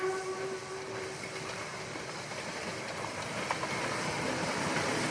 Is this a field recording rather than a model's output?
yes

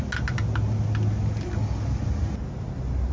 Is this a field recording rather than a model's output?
yes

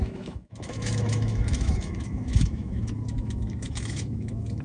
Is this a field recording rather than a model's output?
no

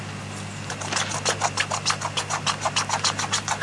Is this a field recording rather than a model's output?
yes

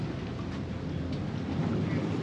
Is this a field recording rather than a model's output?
yes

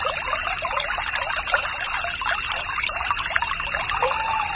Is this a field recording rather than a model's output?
yes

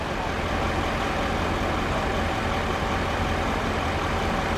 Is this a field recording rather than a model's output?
no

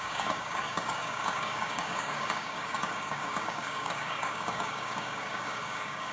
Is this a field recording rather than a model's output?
no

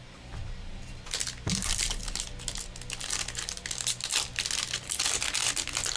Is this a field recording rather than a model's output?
yes